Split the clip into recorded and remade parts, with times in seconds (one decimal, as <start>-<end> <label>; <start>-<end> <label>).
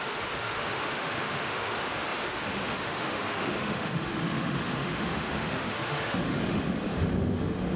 0.0-7.8 remade